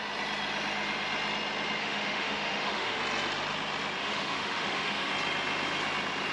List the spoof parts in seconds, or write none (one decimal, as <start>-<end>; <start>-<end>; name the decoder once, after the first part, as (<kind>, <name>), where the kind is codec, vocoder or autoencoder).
1.8-3.0 (autoencoder, DAC-VAE); 4.0-5.1